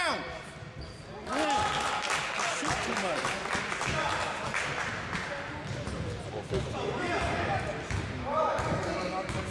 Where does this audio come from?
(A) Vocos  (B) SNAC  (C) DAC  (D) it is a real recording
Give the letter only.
D